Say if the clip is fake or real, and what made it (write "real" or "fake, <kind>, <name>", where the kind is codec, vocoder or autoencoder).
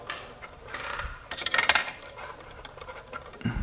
fake, vocoder, BigVGAN v2